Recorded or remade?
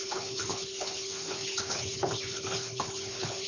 remade